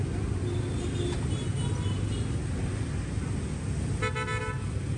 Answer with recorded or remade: recorded